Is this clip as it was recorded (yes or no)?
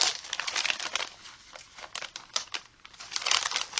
no